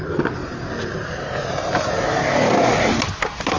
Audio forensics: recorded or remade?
recorded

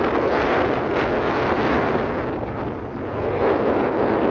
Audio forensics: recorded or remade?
recorded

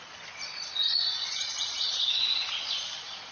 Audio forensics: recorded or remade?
remade